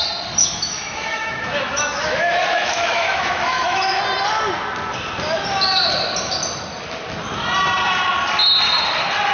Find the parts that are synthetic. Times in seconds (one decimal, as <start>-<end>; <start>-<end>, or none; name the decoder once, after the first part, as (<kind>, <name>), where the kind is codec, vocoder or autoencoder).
0.4-4.0 (autoencoder, DAC-VAE)